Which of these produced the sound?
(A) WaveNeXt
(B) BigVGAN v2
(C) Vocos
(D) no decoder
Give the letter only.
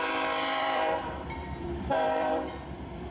B